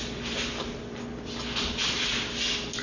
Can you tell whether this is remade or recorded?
recorded